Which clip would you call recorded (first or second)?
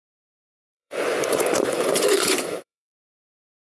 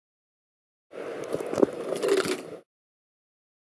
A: second